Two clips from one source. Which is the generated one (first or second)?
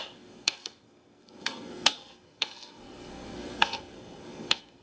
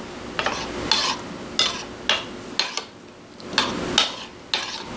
first